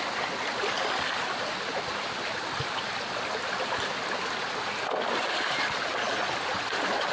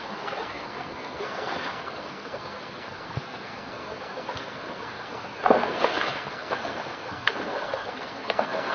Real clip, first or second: first